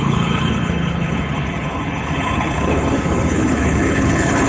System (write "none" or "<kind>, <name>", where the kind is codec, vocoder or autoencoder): codec, HILCodec